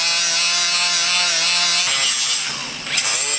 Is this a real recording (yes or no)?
yes